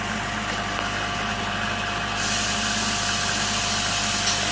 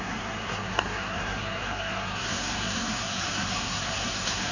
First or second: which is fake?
second